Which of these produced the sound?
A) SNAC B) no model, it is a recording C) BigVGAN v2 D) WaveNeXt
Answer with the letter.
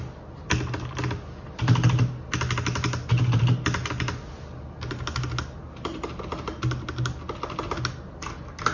B